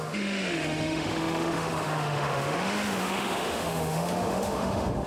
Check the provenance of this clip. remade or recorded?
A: remade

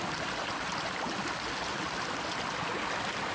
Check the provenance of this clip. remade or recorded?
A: recorded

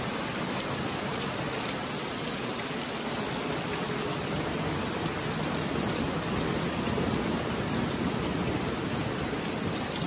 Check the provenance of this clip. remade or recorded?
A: recorded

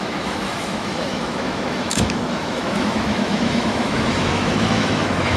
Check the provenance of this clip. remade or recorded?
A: remade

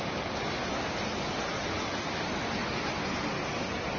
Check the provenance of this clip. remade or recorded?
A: recorded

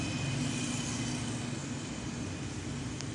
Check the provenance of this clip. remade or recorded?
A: recorded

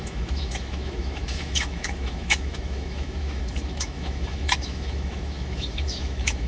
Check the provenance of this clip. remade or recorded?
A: remade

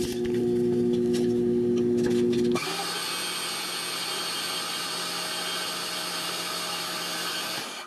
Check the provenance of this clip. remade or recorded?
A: recorded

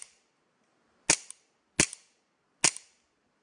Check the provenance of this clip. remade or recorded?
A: recorded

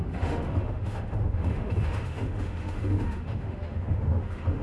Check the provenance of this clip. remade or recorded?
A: remade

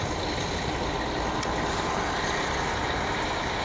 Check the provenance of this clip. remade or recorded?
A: recorded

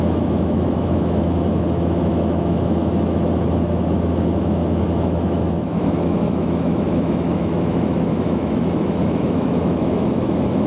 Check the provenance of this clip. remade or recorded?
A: remade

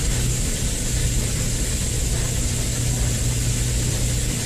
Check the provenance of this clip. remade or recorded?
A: recorded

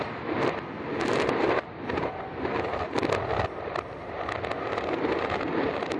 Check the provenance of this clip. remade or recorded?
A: recorded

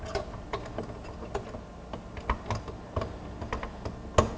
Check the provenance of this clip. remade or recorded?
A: recorded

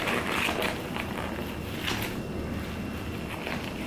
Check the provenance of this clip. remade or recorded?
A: recorded